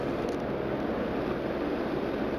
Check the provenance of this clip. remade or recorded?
recorded